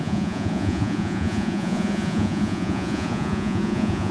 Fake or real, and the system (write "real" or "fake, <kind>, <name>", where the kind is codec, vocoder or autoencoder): fake, vocoder, Vocos